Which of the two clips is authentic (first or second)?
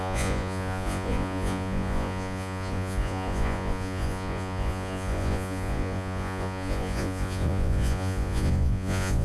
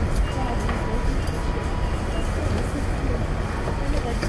second